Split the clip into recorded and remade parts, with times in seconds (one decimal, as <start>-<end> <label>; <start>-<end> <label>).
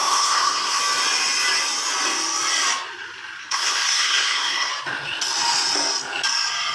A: 0.0-0.8 remade; 0.8-3.4 recorded; 3.4-4.7 remade; 4.7-6.7 recorded